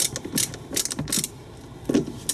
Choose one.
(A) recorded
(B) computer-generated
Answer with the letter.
A